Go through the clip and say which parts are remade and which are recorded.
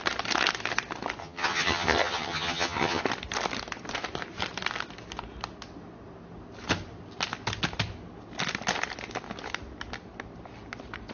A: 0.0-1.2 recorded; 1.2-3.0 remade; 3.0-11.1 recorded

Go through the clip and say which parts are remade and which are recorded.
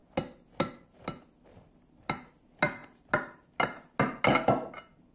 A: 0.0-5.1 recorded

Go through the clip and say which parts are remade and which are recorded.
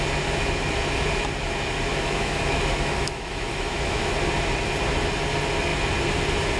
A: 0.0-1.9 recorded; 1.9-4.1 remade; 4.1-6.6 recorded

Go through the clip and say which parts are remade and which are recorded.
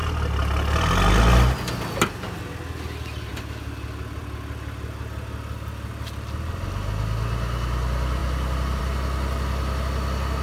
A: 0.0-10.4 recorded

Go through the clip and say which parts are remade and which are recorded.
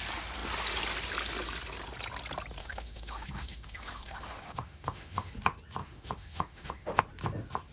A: 0.0-2.6 recorded; 2.6-5.3 remade; 5.3-5.8 recorded; 5.8-7.0 remade; 7.0-7.7 recorded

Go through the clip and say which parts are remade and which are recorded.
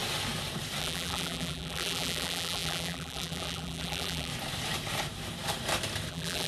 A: 0.0-0.8 recorded; 0.8-4.3 remade; 4.3-6.1 recorded; 6.1-6.5 remade